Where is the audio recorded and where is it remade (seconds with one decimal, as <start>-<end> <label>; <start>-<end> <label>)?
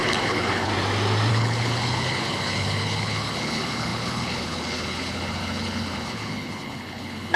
0.0-0.7 remade; 0.7-1.3 recorded; 1.3-7.4 remade